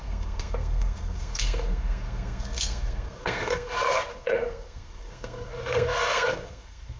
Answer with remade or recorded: remade